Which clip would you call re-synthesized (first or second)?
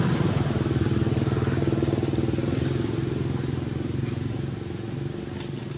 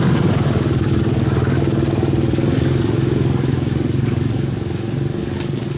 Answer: second